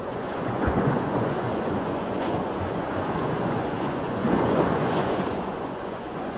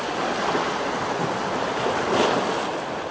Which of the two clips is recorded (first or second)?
second